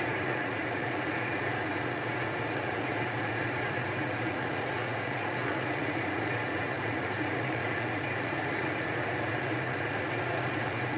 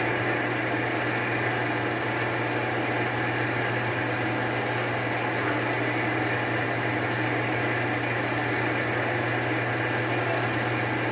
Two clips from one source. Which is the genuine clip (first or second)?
second